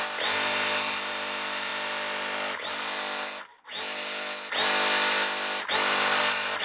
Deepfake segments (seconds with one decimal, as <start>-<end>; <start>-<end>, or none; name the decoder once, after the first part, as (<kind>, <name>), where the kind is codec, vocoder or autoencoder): none